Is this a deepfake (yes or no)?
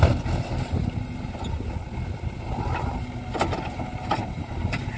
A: no